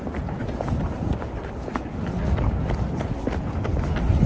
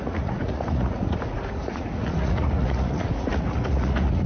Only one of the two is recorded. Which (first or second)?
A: first